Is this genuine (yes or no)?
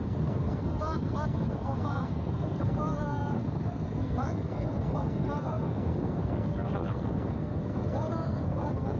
no